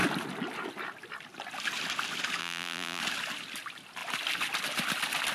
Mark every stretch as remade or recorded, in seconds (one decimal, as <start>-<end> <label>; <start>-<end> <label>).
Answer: 0.0-2.4 recorded; 2.4-3.0 remade; 3.0-5.3 recorded